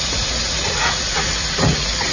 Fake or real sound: fake